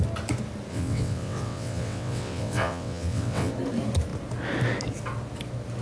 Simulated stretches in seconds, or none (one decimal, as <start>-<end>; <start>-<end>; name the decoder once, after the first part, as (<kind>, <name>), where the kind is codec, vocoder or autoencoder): 0.7-3.5 (vocoder, WaveNeXt)